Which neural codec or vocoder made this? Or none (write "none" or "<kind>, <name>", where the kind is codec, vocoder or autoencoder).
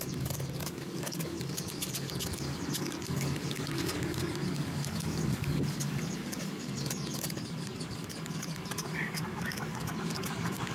codec, DAC